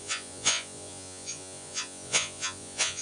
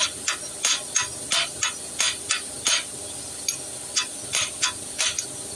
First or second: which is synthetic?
first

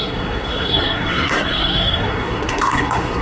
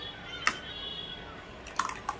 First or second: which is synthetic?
first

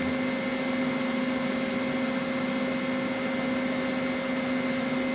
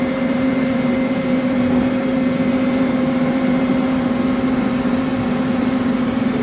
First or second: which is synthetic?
second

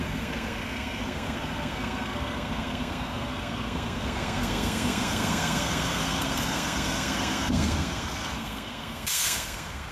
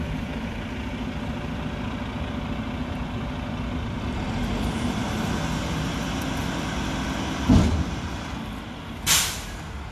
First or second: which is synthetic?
first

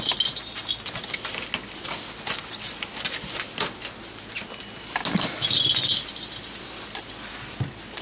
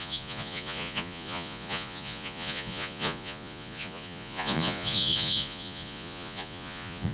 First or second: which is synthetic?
second